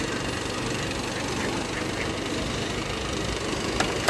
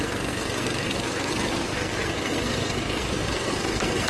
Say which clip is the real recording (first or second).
first